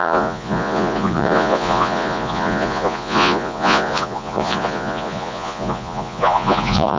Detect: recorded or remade remade